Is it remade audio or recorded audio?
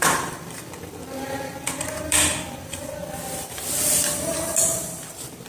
remade